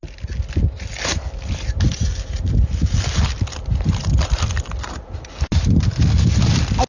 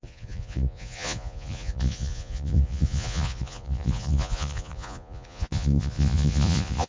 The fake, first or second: second